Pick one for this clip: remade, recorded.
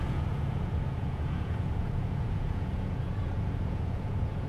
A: remade